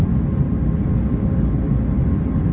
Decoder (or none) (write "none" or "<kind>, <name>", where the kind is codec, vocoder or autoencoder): none